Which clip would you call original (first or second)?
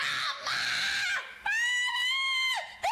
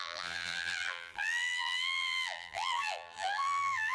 first